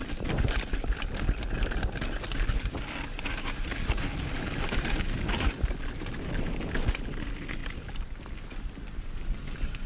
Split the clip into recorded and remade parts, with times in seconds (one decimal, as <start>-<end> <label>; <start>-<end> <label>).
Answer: 0.0-9.9 recorded